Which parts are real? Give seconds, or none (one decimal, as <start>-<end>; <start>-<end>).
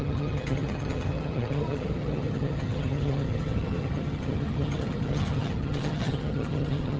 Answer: none